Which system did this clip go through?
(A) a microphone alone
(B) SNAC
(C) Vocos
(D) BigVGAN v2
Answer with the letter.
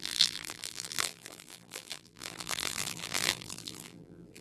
D